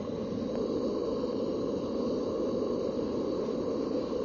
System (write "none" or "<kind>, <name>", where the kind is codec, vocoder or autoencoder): none